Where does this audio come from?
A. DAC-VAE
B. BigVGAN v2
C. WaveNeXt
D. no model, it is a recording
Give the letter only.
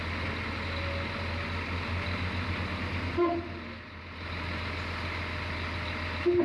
D